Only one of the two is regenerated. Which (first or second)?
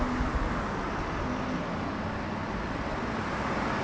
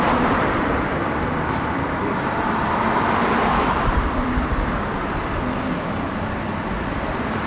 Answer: second